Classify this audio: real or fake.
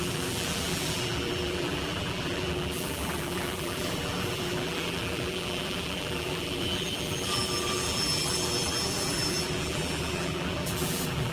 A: fake